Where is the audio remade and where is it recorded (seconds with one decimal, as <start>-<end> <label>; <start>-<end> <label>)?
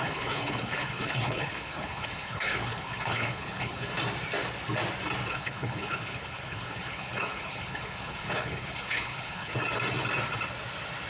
0.0-3.9 remade; 3.9-5.3 recorded; 5.3-9.5 remade; 9.5-11.1 recorded